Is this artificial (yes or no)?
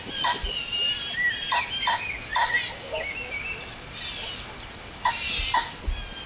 no